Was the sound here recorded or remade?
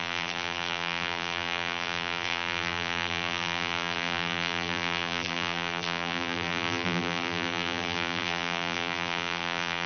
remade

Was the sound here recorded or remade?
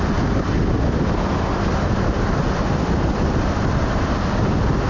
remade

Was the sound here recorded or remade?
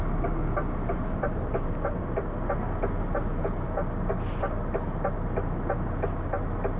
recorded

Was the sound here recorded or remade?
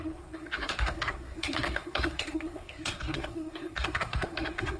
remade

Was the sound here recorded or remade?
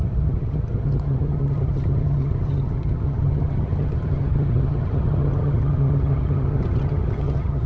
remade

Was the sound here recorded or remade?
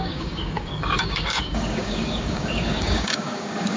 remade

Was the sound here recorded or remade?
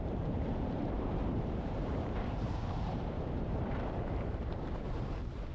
remade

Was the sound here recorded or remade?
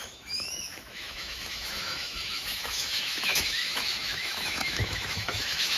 remade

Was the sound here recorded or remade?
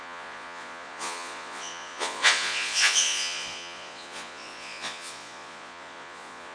remade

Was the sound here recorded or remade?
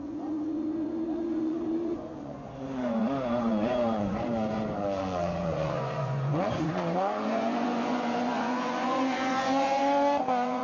remade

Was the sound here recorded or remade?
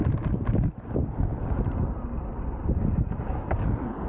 recorded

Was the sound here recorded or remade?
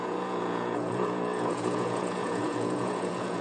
remade